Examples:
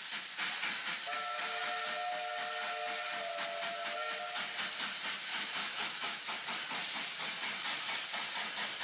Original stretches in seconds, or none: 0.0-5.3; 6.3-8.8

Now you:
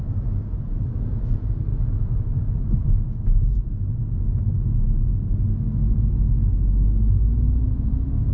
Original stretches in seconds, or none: 0.0-1.7; 2.4-8.3

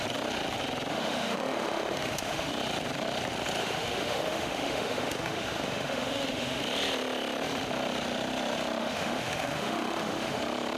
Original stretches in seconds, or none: 0.0-0.9; 2.5-3.6; 6.6-8.8; 10.4-10.8

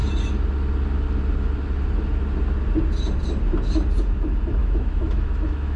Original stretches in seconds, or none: 0.0-4.6

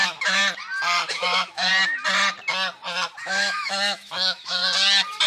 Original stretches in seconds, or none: 0.4-1.1; 1.7-3.2; 4.6-5.3

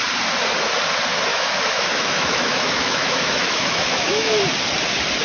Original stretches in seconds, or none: 0.0-1.3; 4.4-5.2